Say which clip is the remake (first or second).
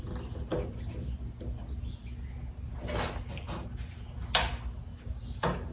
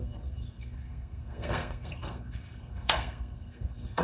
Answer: second